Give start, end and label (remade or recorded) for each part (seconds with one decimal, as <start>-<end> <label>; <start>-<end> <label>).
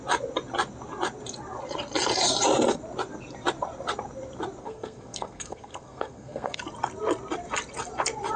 0.0-4.6 recorded; 4.6-6.6 remade; 6.6-8.4 recorded